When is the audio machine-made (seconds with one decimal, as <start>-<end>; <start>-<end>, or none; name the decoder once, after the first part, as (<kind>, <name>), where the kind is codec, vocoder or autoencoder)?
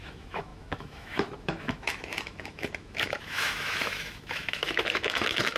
0.0-5.6 (autoencoder, DAC-VAE)